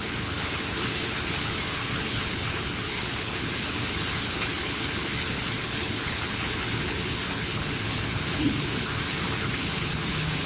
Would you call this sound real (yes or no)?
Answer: no